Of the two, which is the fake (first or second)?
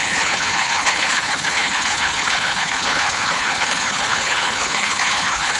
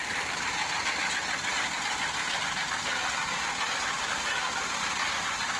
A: first